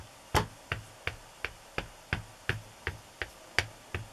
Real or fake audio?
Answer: real